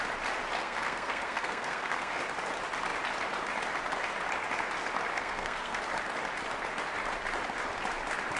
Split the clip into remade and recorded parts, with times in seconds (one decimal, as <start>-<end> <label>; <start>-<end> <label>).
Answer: 0.0-0.6 recorded; 0.6-2.2 remade; 2.2-5.1 recorded; 5.1-5.8 remade; 5.8-8.4 recorded